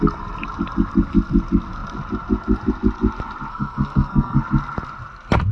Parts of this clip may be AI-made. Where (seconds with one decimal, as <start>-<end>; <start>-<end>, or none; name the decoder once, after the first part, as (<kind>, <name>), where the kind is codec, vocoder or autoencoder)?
3.5-4.4 (codec, SNAC)